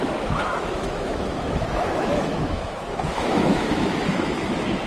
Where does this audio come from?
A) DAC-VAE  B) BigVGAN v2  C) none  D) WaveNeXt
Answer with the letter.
A